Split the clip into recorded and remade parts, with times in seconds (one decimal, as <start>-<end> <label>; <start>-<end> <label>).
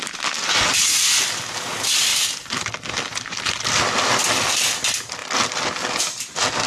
0.0-2.1 recorded; 2.1-4.3 remade; 4.3-6.7 recorded